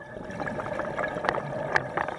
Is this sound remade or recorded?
recorded